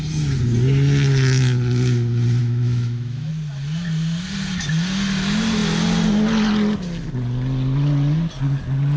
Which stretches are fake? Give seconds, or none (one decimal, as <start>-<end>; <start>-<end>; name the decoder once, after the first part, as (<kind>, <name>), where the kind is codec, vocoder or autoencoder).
2.4-3.3 (autoencoder, DAC-VAE)